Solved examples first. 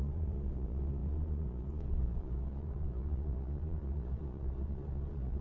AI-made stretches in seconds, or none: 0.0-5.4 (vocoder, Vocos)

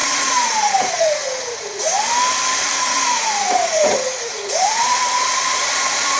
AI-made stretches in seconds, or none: 0.0-1.9 (vocoder, Vocos); 2.6-6.2

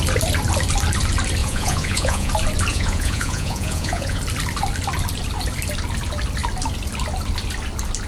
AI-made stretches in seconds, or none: 1.4-2.3 (vocoder, Vocos); 2.7-4.2

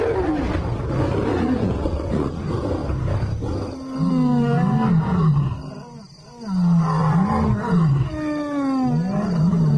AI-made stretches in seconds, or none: 1.3-2.4 (vocoder, Vocos)

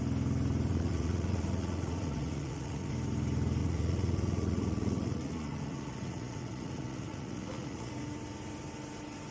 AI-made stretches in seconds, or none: 0.7-2.9 (vocoder, Vocos); 3.6-7.9